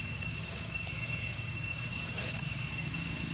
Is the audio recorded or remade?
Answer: remade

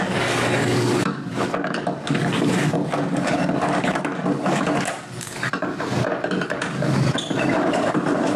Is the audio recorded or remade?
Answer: remade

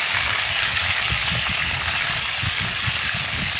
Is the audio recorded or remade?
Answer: remade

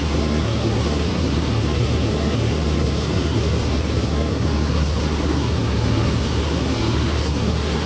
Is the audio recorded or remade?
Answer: remade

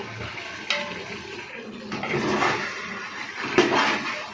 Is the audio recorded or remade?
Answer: recorded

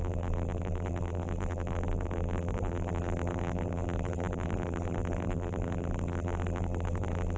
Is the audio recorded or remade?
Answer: remade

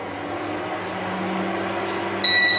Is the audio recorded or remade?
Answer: recorded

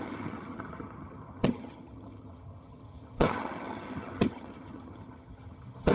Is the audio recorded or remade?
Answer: remade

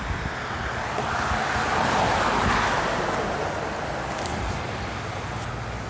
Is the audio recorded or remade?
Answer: recorded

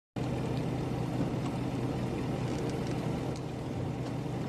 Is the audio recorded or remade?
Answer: recorded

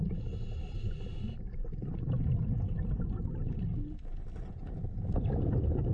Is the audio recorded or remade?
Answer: recorded